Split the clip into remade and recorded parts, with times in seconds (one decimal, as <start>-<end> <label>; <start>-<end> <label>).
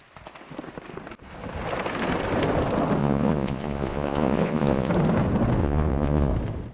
0.0-3.0 recorded; 3.0-4.9 remade; 4.9-5.6 recorded; 5.6-6.3 remade; 6.3-6.7 recorded